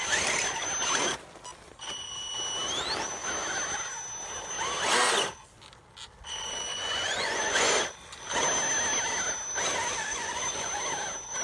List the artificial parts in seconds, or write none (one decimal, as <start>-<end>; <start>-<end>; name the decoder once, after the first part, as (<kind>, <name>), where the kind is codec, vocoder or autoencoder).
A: 6.7-7.7 (vocoder, Vocos); 10.1-10.8